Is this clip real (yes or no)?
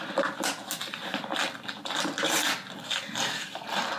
yes